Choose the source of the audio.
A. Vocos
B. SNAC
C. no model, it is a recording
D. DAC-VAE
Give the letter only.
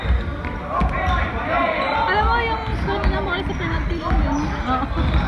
C